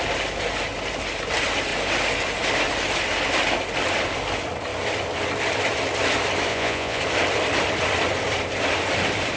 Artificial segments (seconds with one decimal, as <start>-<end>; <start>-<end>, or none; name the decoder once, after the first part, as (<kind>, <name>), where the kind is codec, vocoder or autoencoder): 6.5-7.0 (vocoder, Vocos)

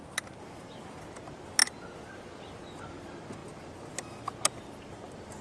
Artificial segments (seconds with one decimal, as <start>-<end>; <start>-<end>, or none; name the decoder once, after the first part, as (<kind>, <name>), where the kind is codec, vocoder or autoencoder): none

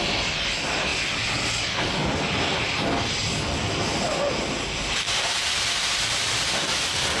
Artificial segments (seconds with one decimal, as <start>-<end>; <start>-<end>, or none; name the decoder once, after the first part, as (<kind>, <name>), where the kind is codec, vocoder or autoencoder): none

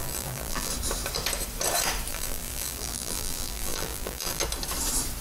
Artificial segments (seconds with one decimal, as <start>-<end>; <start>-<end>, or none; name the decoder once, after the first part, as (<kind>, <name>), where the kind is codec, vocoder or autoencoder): 0.0-0.7 (vocoder, BigVGAN v2); 2.1-4.4

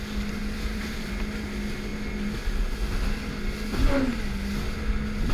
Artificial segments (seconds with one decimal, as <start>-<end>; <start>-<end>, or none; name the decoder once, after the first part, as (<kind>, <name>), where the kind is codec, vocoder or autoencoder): 0.4-1.2 (vocoder, BigVGAN v2)